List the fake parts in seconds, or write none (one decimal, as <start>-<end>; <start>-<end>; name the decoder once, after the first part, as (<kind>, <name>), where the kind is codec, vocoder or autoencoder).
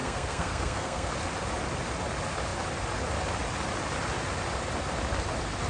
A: 0.0-1.1 (codec, SNAC)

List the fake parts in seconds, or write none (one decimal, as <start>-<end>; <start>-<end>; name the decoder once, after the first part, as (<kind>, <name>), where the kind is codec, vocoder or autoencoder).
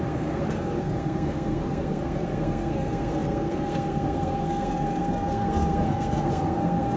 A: 0.0-7.0 (codec, SNAC)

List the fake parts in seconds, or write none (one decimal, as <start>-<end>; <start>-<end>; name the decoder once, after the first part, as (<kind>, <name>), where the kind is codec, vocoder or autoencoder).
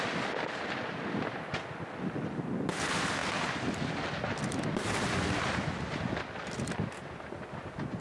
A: none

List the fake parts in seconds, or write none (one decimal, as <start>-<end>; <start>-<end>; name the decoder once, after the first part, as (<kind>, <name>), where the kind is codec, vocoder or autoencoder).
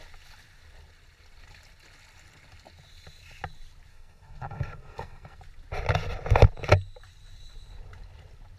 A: 3.9-5.4 (codec, SNAC)